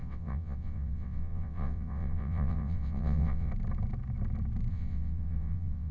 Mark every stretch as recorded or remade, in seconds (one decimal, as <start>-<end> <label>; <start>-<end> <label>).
0.0-3.5 remade; 3.5-4.7 recorded; 4.7-5.9 remade